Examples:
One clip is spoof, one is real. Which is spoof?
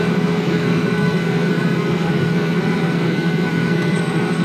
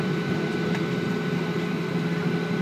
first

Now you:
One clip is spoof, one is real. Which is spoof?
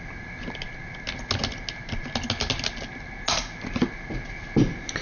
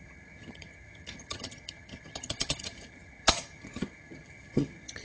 second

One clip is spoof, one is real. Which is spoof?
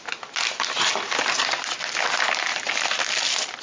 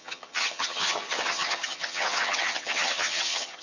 second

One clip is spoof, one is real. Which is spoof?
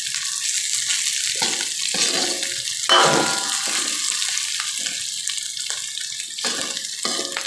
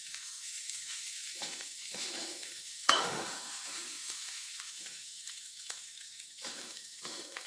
second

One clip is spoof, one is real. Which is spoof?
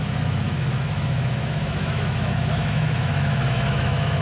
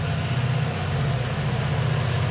first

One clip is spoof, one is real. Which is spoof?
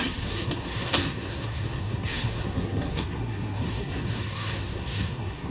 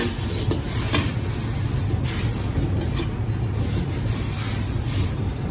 first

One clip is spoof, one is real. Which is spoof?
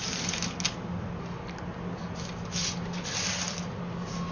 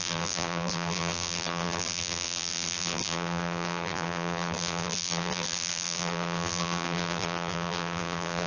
second